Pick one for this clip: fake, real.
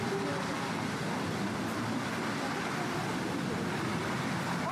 real